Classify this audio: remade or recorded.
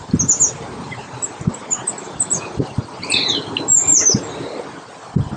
recorded